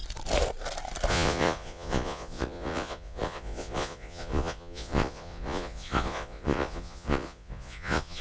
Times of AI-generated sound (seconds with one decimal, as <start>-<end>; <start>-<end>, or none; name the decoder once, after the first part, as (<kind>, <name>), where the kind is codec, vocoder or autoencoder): 1.1-8.2 (vocoder, Vocos)